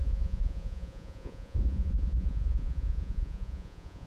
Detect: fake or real fake